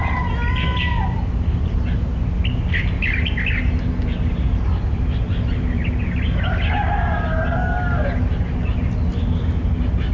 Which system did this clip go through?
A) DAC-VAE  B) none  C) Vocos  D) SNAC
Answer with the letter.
B